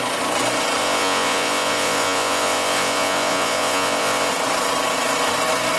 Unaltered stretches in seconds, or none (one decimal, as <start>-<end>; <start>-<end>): 0.0-0.8; 4.3-5.8

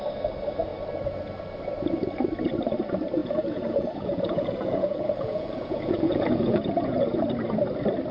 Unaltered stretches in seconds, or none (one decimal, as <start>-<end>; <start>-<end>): 0.0-3.2; 7.2-8.1

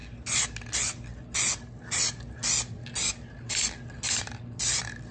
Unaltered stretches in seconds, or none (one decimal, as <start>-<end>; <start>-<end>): 0.0-5.1

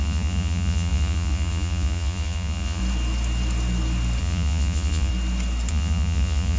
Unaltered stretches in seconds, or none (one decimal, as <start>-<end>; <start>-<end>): 2.8-4.2; 5.1-5.7

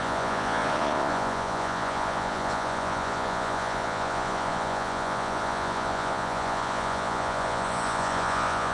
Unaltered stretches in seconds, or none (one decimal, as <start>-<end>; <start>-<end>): none

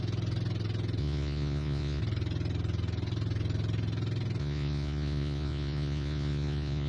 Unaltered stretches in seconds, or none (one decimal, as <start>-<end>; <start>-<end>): 0.0-1.0; 2.0-4.4